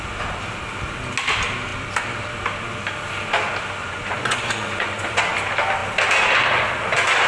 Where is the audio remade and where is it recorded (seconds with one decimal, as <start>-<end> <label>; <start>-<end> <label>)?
0.0-3.8 recorded; 3.8-5.2 remade; 5.2-7.3 recorded